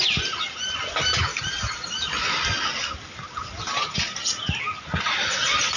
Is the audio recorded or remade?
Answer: recorded